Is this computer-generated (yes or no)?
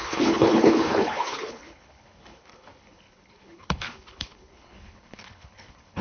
yes